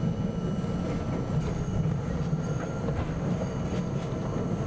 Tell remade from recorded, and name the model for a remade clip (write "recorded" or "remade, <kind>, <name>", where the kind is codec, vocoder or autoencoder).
recorded